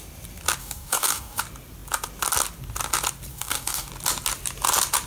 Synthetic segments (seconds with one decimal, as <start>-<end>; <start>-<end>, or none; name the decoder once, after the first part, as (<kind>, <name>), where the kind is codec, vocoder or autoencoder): 0.6-1.4 (codec, DAC); 3.3-3.9